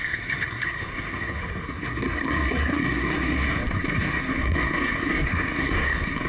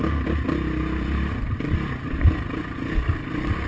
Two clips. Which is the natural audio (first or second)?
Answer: second